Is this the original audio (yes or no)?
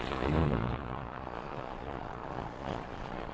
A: no